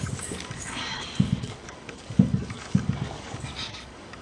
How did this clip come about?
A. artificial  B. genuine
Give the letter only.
A